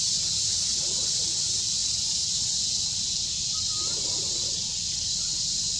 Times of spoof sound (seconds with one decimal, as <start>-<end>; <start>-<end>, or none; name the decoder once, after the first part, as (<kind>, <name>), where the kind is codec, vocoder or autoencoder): none